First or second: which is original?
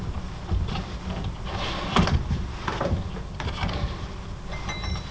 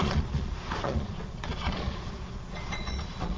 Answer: first